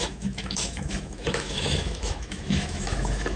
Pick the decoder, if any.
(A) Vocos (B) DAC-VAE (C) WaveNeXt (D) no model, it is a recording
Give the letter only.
B